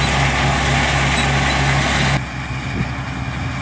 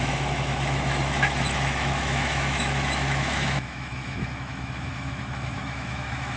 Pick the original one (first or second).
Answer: first